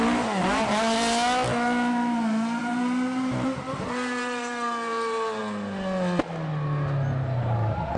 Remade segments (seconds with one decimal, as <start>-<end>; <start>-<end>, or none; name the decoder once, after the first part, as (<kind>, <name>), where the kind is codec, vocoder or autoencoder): 2.6-5.4 (vocoder, BigVGAN v2)